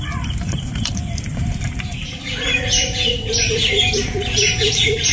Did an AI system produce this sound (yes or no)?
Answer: yes